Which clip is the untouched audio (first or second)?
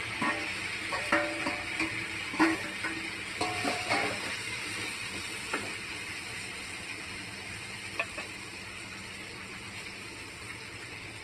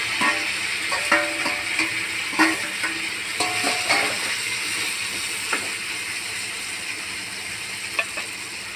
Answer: second